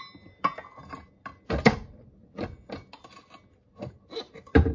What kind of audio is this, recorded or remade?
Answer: recorded